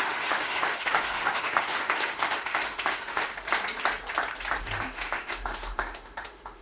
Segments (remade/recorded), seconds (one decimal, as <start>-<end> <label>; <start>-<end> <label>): 0.0-3.3 remade; 3.3-4.6 recorded; 4.6-6.6 remade